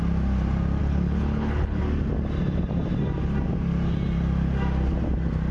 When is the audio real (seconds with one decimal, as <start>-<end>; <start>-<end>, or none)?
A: 0.0-0.8; 1.8-5.5